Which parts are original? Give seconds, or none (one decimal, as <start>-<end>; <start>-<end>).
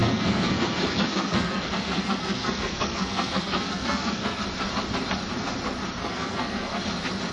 4.4-6.0; 6.8-7.3